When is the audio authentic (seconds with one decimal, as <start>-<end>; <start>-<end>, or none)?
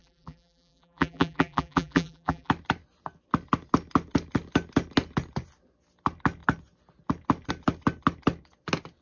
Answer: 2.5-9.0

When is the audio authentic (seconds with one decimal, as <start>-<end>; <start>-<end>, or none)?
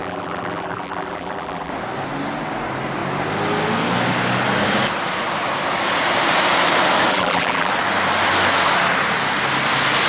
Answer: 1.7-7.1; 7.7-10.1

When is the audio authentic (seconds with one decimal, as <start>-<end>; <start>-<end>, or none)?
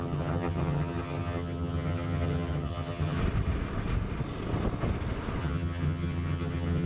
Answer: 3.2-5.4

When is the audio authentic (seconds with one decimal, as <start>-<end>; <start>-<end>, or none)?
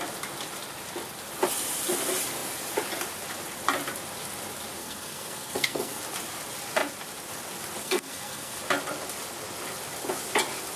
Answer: 0.0-4.8; 6.0-7.8; 8.6-10.8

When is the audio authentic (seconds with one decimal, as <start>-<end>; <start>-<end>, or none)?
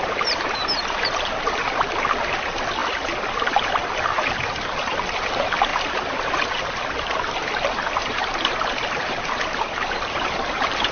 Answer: 0.0-10.9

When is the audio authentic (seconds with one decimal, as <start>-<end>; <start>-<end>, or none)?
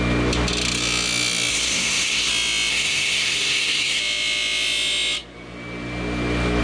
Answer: 0.0-1.5; 2.3-2.7; 4.0-6.6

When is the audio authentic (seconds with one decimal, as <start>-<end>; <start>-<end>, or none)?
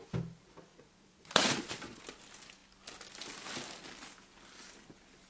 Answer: 0.0-0.7; 2.0-5.3